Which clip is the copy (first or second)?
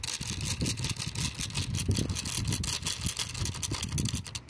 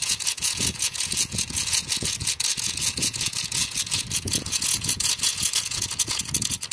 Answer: second